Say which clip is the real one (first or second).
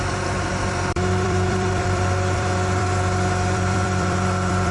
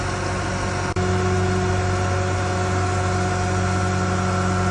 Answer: second